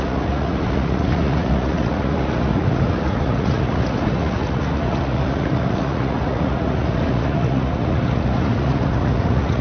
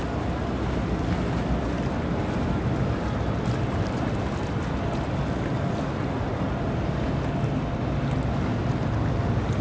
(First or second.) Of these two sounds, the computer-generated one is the first